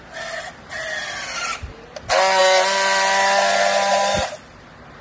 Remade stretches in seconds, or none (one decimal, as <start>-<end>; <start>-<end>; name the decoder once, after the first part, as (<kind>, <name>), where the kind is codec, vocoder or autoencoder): none